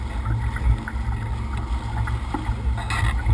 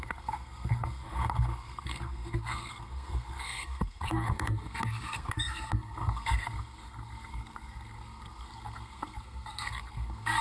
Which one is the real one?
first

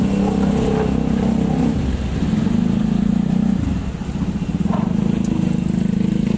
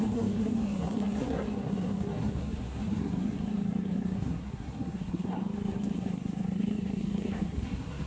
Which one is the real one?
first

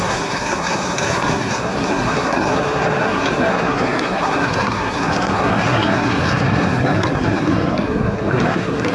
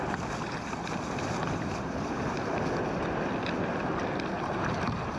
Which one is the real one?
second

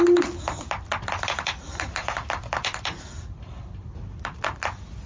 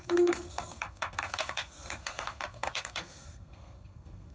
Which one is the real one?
first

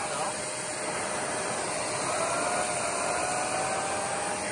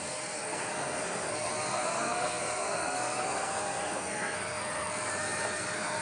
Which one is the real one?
first